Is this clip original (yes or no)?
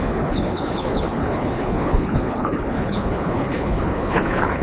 no